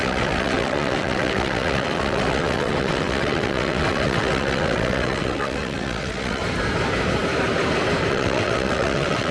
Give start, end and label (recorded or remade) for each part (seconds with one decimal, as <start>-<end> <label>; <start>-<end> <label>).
0.0-6.4 remade; 6.4-8.1 recorded; 8.1-9.3 remade